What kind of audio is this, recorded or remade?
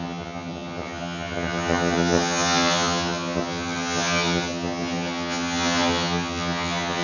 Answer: remade